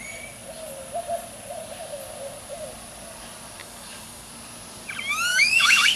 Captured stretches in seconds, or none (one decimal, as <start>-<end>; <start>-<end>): 0.0-3.6; 4.3-5.3